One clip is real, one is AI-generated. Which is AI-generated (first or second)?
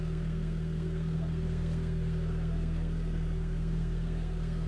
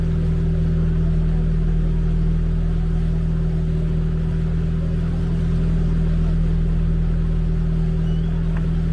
first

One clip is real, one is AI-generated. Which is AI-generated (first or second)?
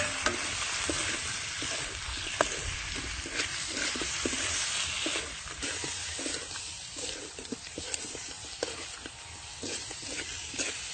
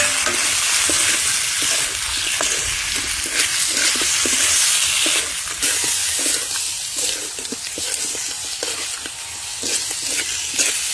first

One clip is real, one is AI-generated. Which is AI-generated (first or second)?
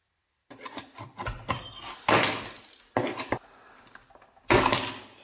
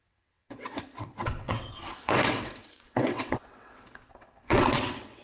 second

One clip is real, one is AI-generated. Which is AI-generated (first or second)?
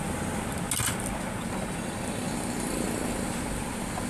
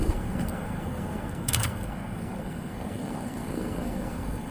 second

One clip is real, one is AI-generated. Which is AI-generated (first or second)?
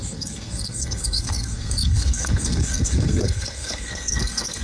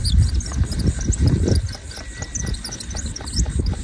first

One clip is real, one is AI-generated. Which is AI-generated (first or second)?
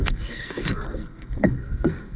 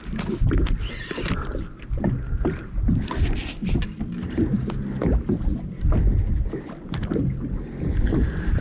first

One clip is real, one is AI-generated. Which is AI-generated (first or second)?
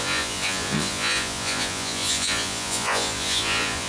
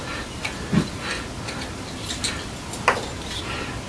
first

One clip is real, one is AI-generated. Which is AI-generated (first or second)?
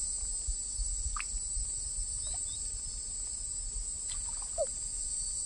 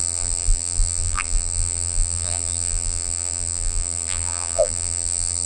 second